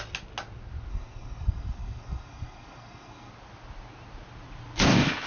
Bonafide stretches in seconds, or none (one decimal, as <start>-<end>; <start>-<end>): 0.0-0.9; 3.3-5.3